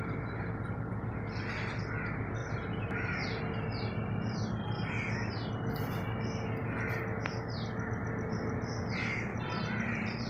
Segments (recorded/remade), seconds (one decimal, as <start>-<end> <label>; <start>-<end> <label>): 0.0-2.4 recorded; 2.4-3.4 remade; 3.4-9.3 recorded; 9.3-10.3 remade